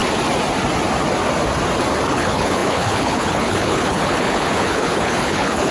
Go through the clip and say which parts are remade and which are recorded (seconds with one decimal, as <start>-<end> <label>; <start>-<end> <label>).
0.0-2.1 recorded; 2.1-5.7 remade